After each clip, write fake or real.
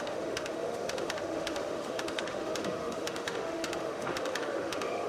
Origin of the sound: fake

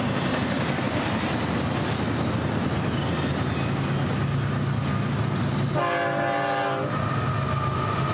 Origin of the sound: real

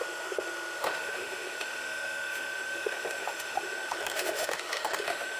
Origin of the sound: fake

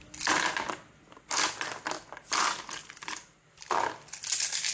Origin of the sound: real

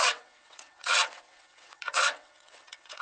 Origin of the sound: fake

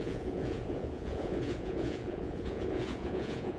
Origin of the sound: fake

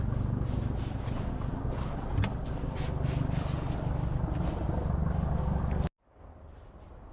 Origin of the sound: real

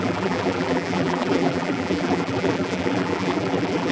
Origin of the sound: fake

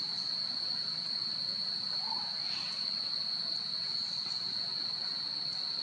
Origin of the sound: real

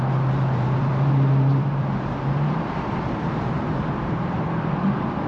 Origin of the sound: fake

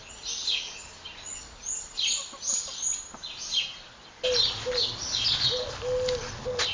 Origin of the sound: real